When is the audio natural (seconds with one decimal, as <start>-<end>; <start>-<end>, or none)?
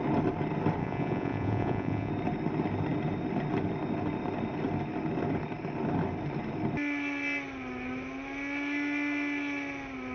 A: 0.0-0.8; 2.1-10.1